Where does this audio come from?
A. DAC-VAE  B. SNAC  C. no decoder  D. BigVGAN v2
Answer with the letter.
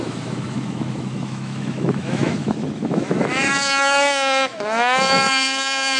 A